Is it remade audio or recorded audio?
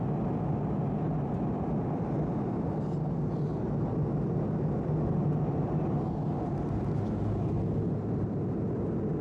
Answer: recorded